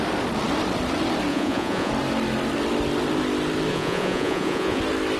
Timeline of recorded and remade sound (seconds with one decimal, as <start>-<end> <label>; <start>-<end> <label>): 0.0-1.3 recorded; 1.3-1.9 remade; 1.9-3.7 recorded; 3.7-4.8 remade; 4.8-5.2 recorded